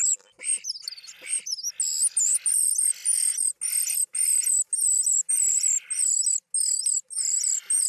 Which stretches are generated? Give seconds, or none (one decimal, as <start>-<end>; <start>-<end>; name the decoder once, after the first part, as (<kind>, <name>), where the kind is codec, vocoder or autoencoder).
0.0-0.5 (vocoder, BigVGAN v2); 2.2-3.0; 5.3-6.0; 7.2-7.9